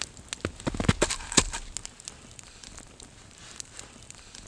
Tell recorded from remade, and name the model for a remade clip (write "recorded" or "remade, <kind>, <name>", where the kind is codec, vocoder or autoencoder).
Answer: recorded